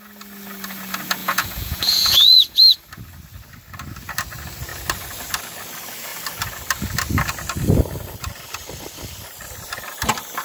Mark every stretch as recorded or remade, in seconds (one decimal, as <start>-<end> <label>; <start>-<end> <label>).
0.0-1.2 recorded; 1.2-2.8 remade; 2.8-10.4 recorded